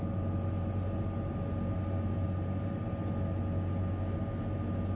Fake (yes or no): no